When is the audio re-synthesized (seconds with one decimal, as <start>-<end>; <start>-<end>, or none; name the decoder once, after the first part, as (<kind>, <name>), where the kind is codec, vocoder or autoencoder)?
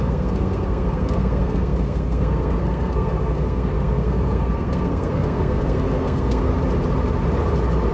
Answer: 0.0-6.5 (codec, SNAC)